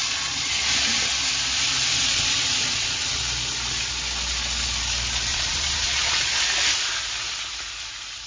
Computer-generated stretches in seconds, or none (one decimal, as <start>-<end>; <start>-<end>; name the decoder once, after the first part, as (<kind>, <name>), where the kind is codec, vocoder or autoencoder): 0.0-0.6 (vocoder, Vocos); 1.9-3.2; 5.3-6.3